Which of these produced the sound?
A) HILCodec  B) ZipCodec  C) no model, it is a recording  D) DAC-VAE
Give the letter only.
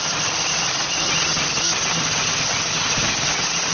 C